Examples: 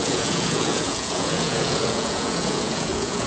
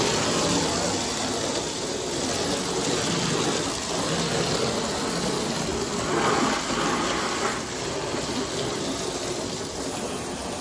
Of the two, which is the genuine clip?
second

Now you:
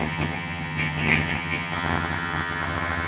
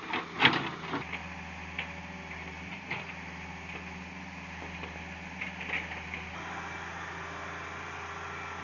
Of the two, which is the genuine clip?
second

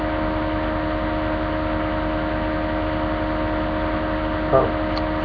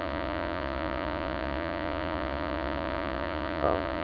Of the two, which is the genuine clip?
first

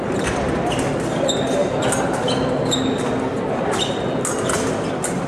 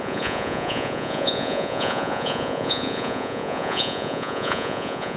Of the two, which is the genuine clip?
first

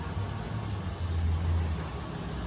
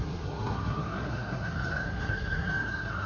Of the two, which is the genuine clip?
first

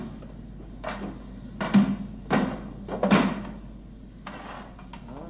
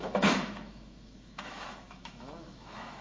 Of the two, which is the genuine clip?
first